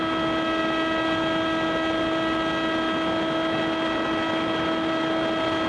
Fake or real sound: real